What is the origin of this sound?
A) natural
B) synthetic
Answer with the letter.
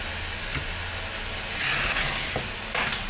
A